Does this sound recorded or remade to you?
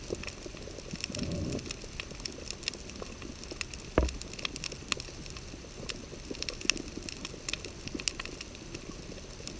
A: recorded